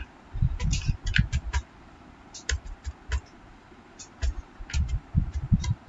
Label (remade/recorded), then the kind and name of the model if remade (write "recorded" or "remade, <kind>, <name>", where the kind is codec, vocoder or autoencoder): recorded